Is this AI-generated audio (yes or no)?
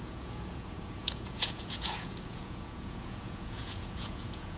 yes